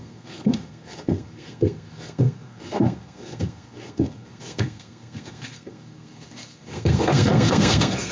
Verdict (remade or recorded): remade